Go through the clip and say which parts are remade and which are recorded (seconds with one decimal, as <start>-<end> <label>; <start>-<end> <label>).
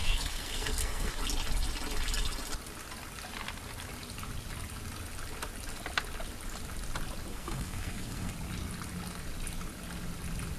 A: 0.0-1.2 remade; 1.2-7.3 recorded; 7.3-8.3 remade; 8.3-10.6 recorded